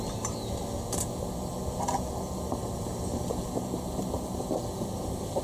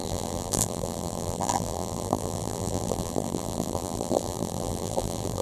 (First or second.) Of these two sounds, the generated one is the second